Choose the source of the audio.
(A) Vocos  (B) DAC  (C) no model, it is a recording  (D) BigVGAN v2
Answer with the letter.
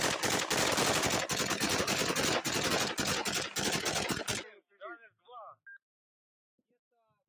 C